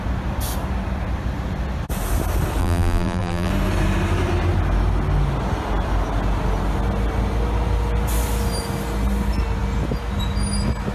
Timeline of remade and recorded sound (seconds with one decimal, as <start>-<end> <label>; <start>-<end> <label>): 0.0-2.6 recorded; 2.6-3.5 remade; 3.5-10.9 recorded